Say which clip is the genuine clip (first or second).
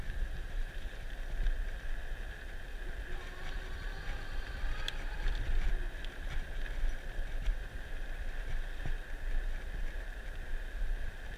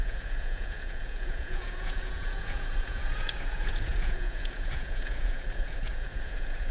first